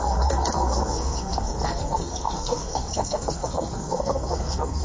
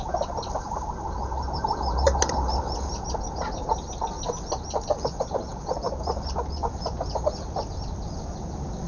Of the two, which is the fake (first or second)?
first